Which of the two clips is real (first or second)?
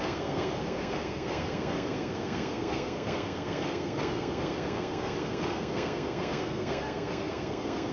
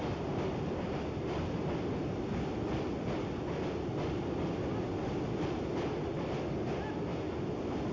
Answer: second